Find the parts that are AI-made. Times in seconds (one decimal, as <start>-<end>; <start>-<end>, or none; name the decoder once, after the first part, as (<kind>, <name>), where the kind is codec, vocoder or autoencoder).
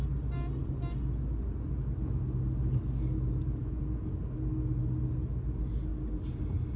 3.6-4.2 (vocoder, Vocos)